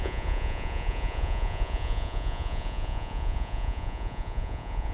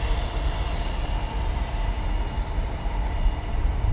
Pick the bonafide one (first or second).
second